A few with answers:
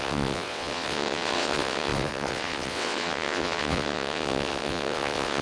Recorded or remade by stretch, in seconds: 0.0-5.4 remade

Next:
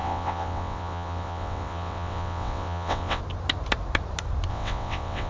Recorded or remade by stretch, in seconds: 0.0-3.2 remade; 3.2-4.5 recorded; 4.5-5.3 remade

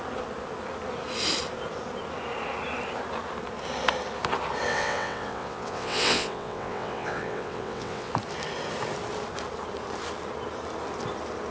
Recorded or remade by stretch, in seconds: 0.0-4.7 recorded; 4.7-8.1 remade; 8.1-11.5 recorded

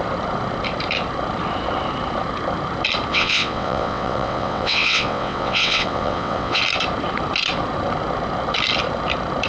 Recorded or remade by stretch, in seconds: 0.0-3.1 recorded; 3.1-6.6 remade; 6.6-9.5 recorded

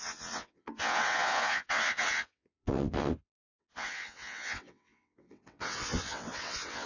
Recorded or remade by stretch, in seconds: 0.0-6.9 remade

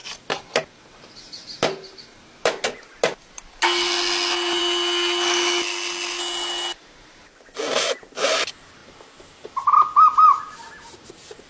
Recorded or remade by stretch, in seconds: 0.0-11.5 recorded